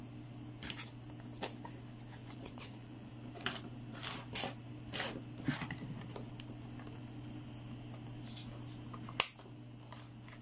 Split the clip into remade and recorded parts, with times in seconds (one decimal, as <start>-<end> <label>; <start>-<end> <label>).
0.0-2.2 recorded; 2.2-3.1 remade; 3.1-10.4 recorded